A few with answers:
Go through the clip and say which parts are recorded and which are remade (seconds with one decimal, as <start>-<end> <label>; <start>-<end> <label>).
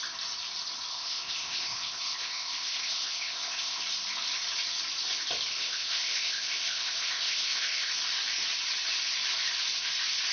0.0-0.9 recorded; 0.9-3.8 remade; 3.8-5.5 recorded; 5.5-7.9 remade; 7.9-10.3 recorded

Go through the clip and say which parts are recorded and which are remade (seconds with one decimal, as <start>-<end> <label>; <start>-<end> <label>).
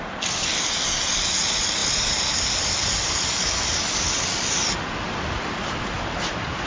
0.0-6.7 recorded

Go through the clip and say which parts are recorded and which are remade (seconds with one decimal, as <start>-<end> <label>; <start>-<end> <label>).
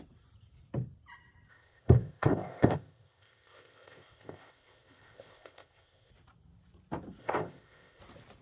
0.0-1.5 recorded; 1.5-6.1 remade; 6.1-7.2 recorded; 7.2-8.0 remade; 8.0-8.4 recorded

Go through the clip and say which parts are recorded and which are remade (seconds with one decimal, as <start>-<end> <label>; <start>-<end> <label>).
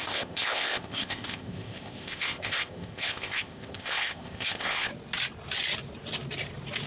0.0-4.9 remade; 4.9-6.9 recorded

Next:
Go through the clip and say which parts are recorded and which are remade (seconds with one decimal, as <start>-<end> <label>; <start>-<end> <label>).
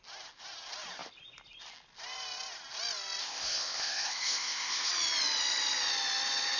0.0-3.2 recorded; 3.2-4.9 remade; 4.9-6.6 recorded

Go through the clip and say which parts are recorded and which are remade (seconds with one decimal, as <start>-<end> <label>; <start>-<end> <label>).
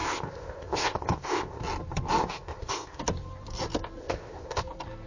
0.0-1.6 remade; 1.6-2.2 recorded; 2.2-3.0 remade; 3.0-4.0 recorded; 4.0-4.6 remade; 4.6-5.1 recorded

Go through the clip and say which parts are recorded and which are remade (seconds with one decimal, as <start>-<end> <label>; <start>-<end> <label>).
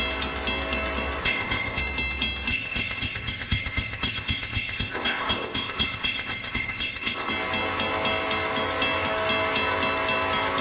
0.0-1.2 recorded; 1.2-1.8 remade; 1.8-2.5 recorded; 2.5-7.3 remade; 7.3-10.6 recorded